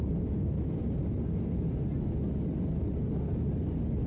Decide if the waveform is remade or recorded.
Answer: recorded